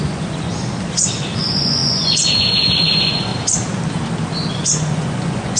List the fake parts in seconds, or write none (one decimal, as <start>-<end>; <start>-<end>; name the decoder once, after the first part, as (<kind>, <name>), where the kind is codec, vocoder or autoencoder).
0.0-0.5 (vocoder, Vocos); 1.4-3.3; 4.5-5.6